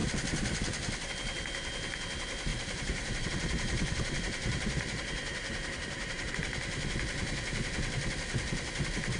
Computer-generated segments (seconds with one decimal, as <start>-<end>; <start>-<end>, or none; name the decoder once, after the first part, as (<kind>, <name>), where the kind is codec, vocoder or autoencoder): 2.5-6.3 (vocoder, BigVGAN v2)